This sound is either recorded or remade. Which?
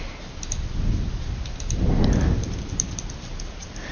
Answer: recorded